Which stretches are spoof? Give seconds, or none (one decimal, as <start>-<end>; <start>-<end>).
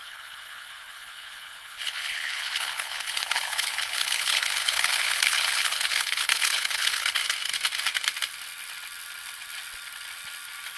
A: 0.0-7.2